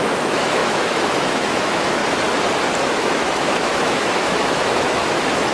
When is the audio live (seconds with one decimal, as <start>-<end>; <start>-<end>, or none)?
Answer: 2.0-2.8